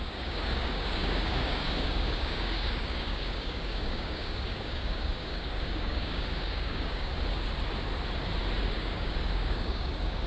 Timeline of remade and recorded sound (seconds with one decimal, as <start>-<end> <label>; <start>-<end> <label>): 0.0-7.1 remade; 7.1-8.6 recorded; 8.6-10.3 remade